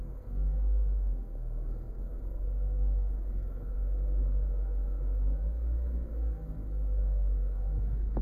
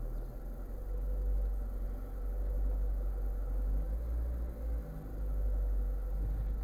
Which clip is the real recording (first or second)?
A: second